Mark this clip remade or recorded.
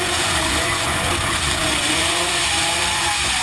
remade